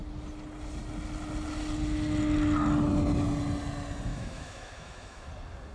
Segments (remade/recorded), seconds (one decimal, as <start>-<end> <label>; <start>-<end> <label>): 0.0-4.1 recorded; 4.1-5.3 remade; 5.3-5.7 recorded